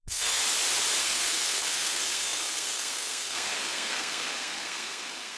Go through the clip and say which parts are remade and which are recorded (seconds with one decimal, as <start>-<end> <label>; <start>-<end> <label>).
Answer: 0.0-0.4 remade; 0.4-1.0 recorded; 1.0-5.4 remade

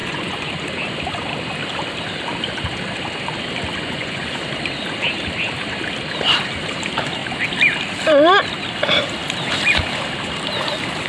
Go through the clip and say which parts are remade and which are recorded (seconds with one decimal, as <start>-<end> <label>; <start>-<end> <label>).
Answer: 0.0-0.5 remade; 0.5-3.7 recorded; 3.7-4.4 remade; 4.4-11.1 recorded

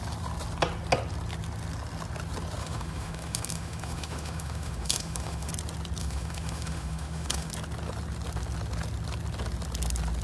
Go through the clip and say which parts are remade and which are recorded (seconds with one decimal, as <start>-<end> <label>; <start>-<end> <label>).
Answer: 0.0-2.6 recorded; 2.6-5.5 remade; 5.5-6.0 recorded; 6.0-7.5 remade; 7.5-10.2 recorded

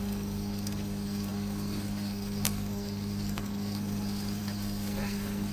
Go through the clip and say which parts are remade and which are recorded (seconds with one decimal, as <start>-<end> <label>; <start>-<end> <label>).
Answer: 0.0-5.5 remade

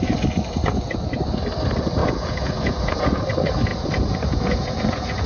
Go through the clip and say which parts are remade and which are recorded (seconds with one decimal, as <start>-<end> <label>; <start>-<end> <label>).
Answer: 0.0-2.0 recorded; 2.0-3.2 remade; 3.2-3.7 recorded; 3.7-5.3 remade